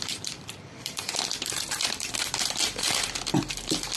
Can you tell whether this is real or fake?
fake